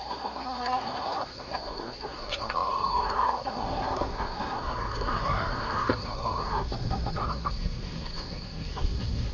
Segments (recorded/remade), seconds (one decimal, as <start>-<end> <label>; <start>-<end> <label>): 0.0-9.3 remade